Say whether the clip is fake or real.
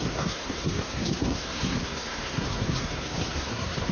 fake